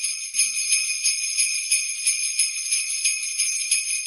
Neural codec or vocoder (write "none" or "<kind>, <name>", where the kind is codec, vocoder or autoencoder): none